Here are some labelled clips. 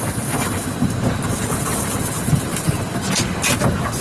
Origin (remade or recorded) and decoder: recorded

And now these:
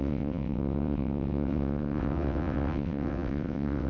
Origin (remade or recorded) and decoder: remade, vocoder, WaveNeXt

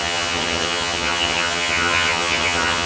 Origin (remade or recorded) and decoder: remade, vocoder, HiFi-GAN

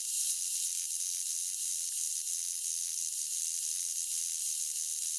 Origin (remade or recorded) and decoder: recorded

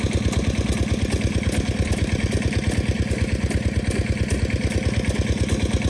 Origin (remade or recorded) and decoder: recorded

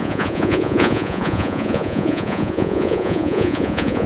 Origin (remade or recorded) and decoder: remade, vocoder, Vocos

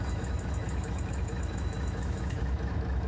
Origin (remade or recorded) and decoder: remade, autoencoder, DAC-VAE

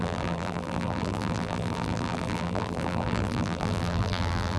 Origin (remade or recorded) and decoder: remade, vocoder, BigVGAN v2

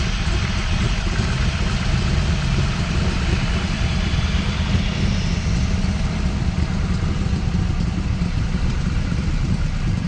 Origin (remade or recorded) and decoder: remade, vocoder, BigVGAN v2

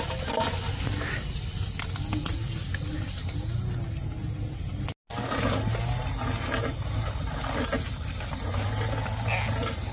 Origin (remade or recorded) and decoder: recorded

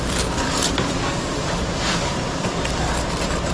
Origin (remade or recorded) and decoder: remade, vocoder, BigVGAN v2